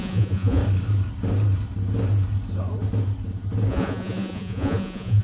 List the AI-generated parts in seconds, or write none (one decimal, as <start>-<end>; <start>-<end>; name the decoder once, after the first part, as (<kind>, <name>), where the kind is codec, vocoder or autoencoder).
0.0-0.6 (vocoder, Vocos); 3.7-5.2